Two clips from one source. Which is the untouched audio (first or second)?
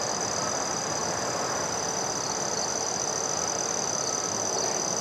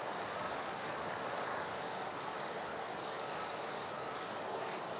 first